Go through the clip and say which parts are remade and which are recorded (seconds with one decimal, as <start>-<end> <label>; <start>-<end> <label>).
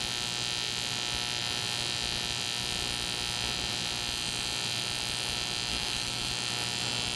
0.0-5.7 recorded; 5.7-6.3 remade; 6.3-7.2 recorded